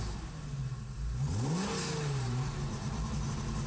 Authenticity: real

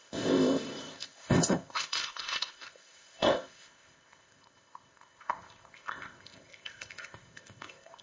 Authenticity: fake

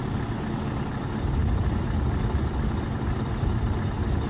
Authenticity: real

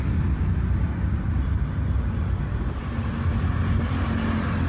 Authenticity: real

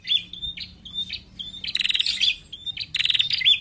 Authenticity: real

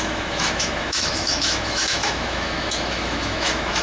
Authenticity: fake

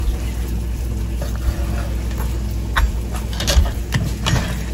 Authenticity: real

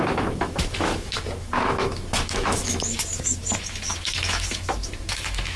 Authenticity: fake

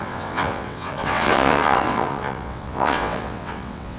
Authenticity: fake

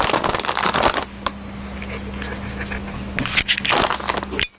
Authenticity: real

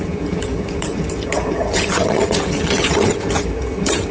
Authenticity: fake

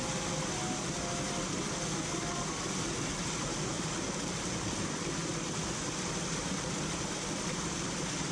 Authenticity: real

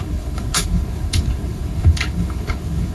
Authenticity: fake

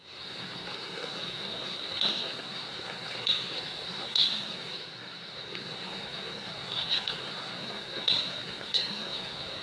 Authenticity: fake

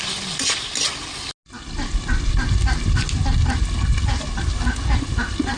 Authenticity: real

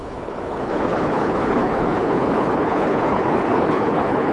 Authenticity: fake